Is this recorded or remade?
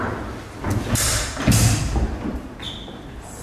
recorded